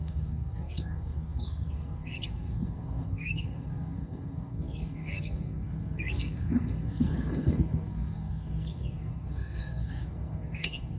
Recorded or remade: remade